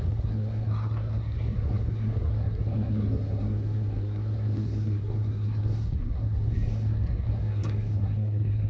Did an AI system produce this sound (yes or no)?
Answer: yes